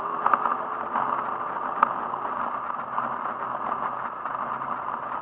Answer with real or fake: real